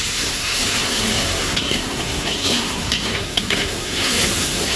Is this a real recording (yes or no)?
no